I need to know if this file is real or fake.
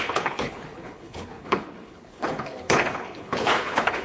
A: fake